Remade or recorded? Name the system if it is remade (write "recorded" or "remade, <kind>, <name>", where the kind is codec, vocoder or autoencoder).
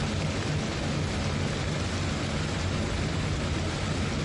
recorded